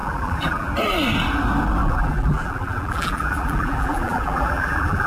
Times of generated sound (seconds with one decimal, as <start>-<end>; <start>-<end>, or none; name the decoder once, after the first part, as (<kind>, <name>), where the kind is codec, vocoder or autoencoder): 0.0-0.7 (vocoder, BigVGAN v2); 1.8-5.1